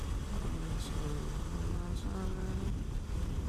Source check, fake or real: real